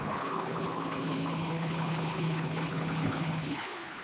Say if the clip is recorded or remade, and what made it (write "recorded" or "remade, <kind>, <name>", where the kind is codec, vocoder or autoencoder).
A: remade, codec, HILCodec